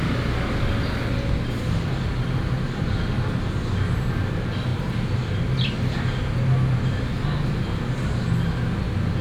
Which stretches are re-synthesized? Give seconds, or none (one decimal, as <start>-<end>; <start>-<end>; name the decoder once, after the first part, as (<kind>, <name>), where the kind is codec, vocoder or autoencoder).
4.7-5.4 (vocoder, BigVGAN v2)